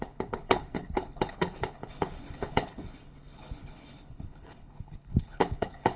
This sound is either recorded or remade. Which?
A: remade